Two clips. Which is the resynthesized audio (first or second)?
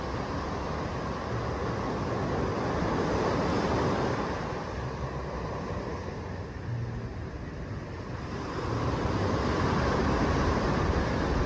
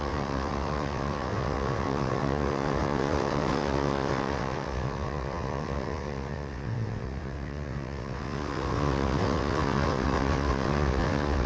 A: second